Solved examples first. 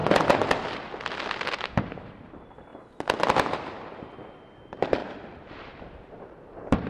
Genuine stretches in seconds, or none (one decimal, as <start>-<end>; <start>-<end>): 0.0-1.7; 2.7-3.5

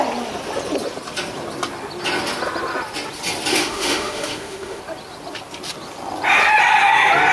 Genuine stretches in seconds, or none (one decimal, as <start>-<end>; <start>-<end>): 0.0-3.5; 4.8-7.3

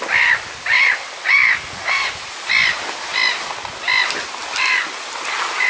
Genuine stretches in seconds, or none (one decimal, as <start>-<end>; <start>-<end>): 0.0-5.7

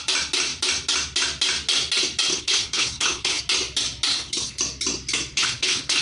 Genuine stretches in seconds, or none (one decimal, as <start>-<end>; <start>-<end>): 0.0-2.3; 3.4-4.1; 4.6-5.3

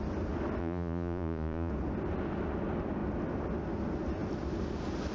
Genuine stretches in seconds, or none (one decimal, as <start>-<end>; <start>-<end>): 0.0-0.6; 1.7-5.1

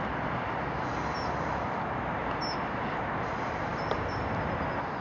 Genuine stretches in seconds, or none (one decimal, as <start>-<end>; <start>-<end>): 0.0-5.0